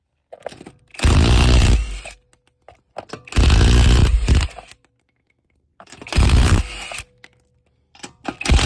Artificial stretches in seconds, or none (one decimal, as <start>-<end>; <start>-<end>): 4.0-5.3; 5.7-6.6